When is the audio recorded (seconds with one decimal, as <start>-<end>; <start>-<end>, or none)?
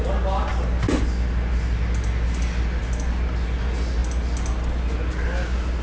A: 0.0-5.8